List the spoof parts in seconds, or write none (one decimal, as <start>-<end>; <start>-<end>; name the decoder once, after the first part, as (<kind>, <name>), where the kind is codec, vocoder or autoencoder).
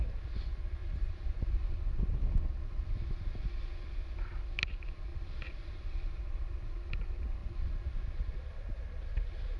0.8-2.3 (vocoder, BigVGAN v2); 5.1-6.9